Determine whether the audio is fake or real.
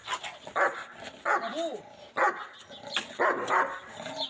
real